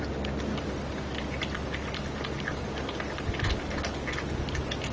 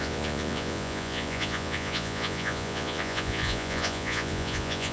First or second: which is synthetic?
second